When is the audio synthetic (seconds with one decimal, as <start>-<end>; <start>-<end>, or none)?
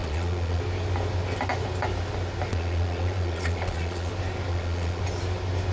0.0-0.6; 2.5-4.1; 4.5-5.0